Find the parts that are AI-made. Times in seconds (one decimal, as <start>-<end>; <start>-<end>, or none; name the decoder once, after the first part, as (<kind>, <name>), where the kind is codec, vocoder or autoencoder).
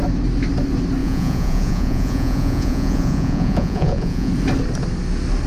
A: 1.0-4.3 (vocoder, Vocos)